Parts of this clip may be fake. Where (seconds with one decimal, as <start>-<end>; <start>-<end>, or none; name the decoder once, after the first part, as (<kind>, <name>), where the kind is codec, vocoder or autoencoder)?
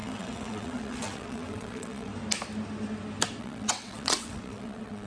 0.0-2.1 (vocoder, WaveNeXt); 3.4-5.1